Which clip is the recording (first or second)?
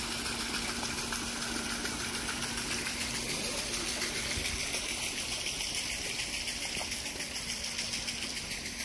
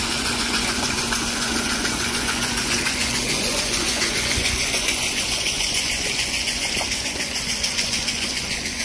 first